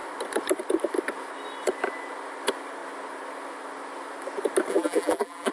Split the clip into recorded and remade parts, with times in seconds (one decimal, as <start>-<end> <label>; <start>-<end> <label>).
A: 0.0-4.7 recorded; 4.7-5.5 remade